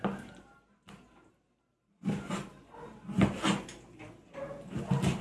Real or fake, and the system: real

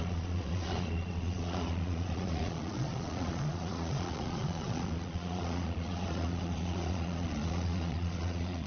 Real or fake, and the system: fake, vocoder, Vocos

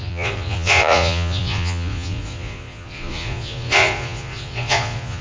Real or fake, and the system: fake, vocoder, Vocos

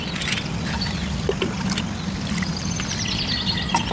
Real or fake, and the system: real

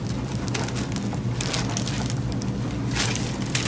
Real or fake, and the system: real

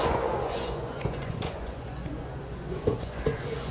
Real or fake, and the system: fake, vocoder, Vocos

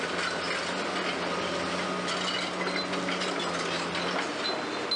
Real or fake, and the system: real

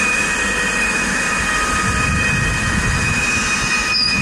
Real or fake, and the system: real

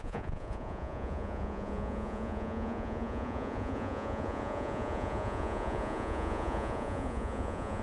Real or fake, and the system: fake, vocoder, Vocos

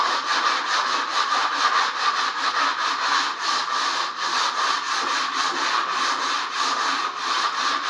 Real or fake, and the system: real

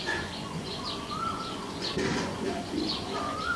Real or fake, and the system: fake, vocoder, Vocos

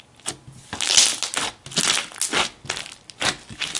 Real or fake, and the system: real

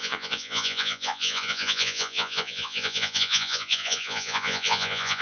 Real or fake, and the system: fake, vocoder, Vocos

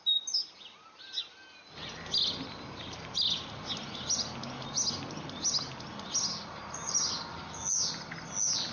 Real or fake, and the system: real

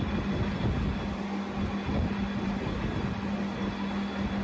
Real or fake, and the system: real